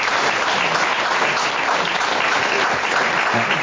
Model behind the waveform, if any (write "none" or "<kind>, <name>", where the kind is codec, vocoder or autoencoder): none